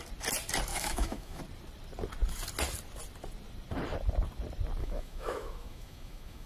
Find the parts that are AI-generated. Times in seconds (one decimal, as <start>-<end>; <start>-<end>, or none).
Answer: 0.7-1.4; 4.8-6.5